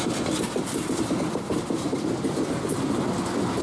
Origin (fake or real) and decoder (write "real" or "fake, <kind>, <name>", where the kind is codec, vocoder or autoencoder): fake, vocoder, BigVGAN v2